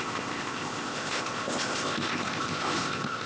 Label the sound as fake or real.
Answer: fake